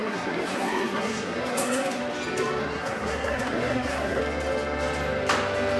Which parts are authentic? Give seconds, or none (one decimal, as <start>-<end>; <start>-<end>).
2.0-2.6; 4.2-5.8

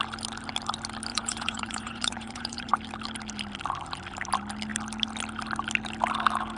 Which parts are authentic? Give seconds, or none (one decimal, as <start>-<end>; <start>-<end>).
0.0-1.1; 2.7-6.6

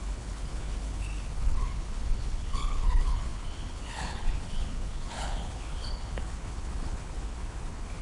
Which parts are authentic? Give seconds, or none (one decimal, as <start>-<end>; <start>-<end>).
none

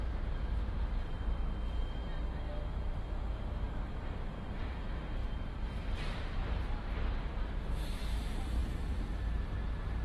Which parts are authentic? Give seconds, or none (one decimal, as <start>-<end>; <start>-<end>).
1.4-2.7

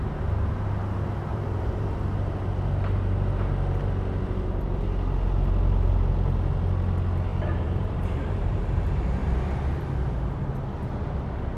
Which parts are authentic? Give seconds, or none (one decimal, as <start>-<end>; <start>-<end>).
0.0-1.3; 1.9-7.3; 8.6-9.2; 9.8-11.6

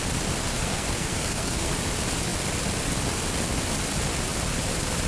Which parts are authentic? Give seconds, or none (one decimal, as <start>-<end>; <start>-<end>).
0.0-0.5; 1.7-5.1

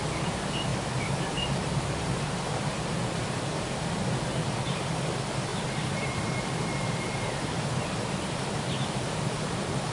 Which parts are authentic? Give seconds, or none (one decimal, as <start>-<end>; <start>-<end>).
0.0-0.7; 2.4-5.5